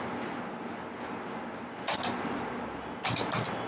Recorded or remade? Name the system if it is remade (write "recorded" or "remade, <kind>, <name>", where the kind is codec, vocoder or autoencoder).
recorded